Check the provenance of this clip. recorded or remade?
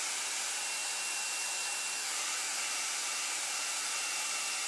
recorded